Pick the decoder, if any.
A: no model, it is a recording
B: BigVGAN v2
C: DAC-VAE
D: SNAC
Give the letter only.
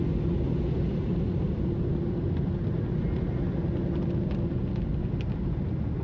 A